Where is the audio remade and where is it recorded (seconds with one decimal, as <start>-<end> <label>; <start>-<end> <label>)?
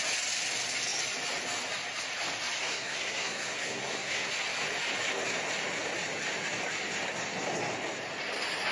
0.0-2.6 recorded; 2.6-4.3 remade; 4.3-8.7 recorded